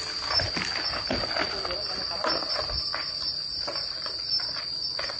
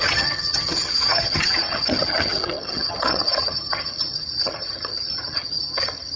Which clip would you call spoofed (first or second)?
second